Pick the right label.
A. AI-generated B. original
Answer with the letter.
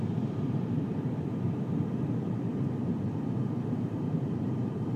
A